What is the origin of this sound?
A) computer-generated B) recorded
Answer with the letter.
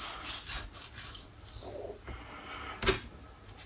B